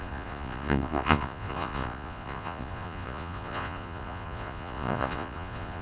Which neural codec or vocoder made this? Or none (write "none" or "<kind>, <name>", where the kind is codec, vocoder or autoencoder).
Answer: vocoder, Vocos